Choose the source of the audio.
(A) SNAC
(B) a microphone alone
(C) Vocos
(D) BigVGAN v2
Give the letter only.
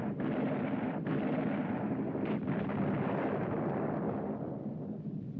D